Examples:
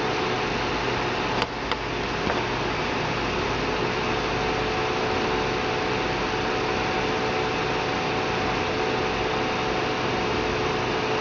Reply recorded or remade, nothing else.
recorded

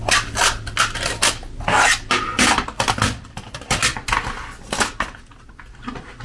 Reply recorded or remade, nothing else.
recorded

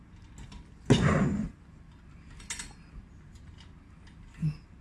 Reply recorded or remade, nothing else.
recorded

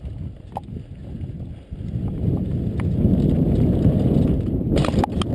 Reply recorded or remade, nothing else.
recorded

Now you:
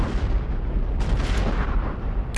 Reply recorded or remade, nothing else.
recorded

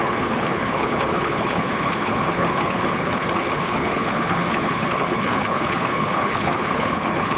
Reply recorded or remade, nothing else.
remade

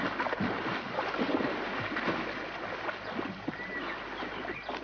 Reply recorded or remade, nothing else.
recorded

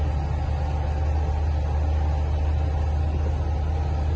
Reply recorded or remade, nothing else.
recorded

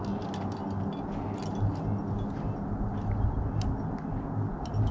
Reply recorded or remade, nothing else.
recorded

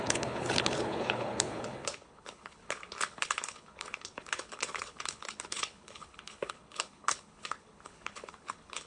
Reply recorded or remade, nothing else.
remade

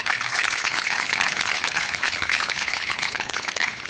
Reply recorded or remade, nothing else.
remade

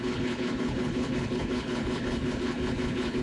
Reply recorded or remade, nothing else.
remade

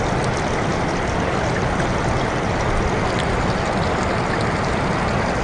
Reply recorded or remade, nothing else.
recorded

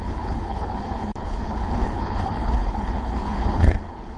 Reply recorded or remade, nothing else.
remade